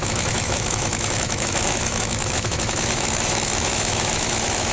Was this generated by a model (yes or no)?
yes